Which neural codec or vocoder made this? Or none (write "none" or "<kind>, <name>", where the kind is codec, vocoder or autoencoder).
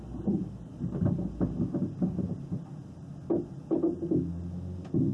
none